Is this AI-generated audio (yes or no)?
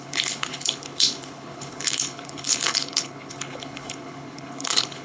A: yes